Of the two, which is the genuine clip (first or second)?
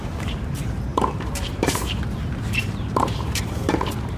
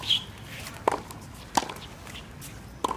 second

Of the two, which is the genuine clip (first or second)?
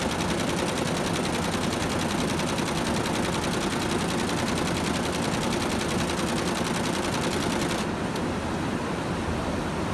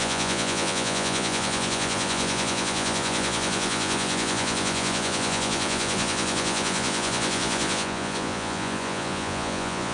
first